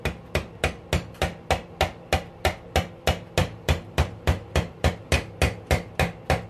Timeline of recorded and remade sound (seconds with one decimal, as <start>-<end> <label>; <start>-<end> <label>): 0.0-3.4 recorded; 3.4-4.9 remade; 4.9-6.5 recorded